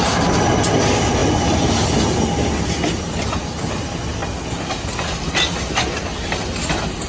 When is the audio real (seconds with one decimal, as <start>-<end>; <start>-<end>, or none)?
0.0-7.1